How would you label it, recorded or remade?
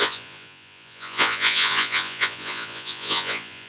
remade